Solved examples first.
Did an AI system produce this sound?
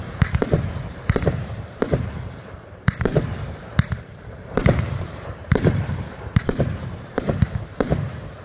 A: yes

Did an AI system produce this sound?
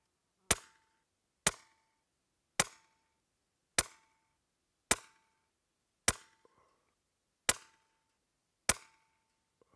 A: no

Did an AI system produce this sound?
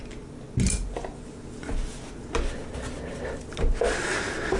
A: no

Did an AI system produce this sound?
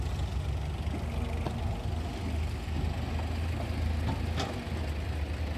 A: no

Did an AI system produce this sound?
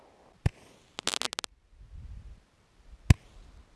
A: no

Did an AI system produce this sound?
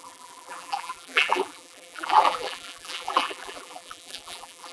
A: yes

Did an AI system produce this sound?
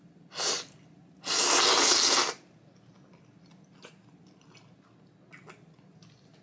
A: no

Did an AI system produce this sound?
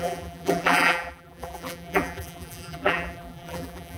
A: yes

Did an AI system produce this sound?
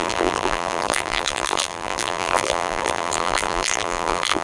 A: yes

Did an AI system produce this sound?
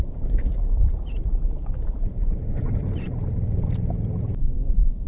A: yes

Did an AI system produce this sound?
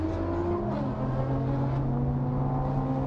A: no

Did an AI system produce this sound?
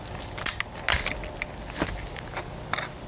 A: no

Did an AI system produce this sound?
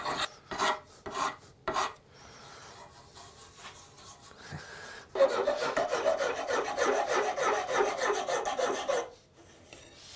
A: yes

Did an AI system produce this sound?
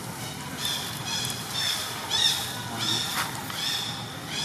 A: no